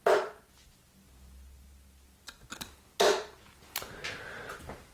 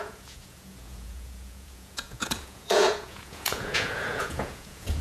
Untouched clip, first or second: first